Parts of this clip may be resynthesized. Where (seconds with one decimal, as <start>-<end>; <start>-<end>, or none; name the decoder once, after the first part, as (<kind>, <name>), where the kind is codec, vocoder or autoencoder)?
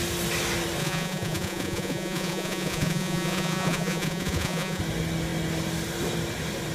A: 0.8-4.8 (vocoder, Vocos)